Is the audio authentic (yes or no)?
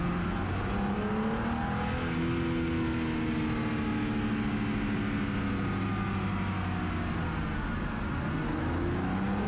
yes